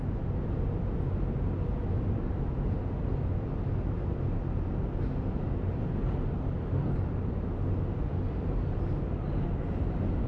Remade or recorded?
recorded